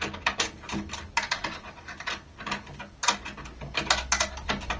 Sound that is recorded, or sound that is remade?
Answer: recorded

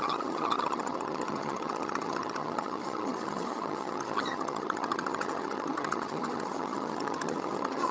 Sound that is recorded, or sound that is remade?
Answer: remade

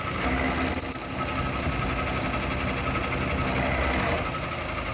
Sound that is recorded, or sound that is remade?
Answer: recorded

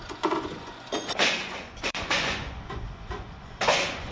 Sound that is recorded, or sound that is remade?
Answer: remade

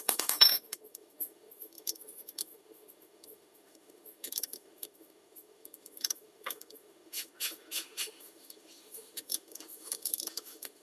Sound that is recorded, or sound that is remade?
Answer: remade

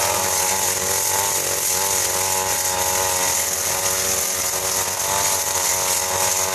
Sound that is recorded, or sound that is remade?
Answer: recorded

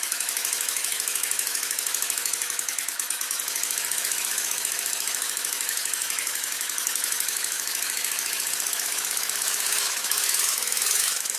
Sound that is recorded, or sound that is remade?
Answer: remade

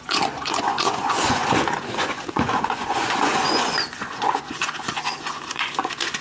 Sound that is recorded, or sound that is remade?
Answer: remade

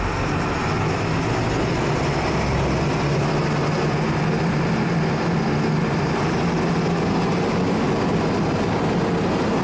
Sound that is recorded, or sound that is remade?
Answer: recorded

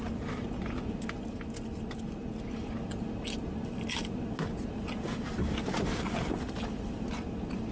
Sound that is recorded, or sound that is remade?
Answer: recorded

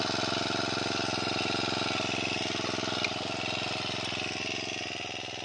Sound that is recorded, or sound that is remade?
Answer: recorded